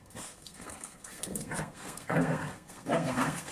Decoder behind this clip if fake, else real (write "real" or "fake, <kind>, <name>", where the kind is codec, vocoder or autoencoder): fake, codec, SNAC